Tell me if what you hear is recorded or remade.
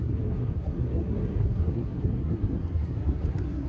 remade